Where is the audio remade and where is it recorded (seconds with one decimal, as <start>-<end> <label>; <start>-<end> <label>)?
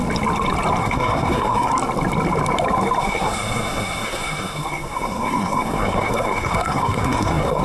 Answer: 0.0-0.8 recorded; 0.8-1.7 remade; 1.7-3.0 recorded; 3.0-7.6 remade